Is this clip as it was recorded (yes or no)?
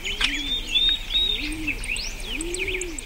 yes